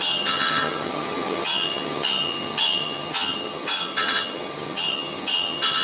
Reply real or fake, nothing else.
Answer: fake